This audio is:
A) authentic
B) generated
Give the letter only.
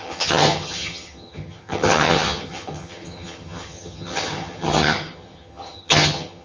B